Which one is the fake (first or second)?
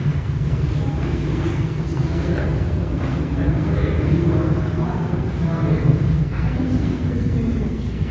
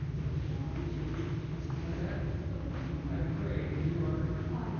first